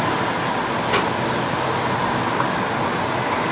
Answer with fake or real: real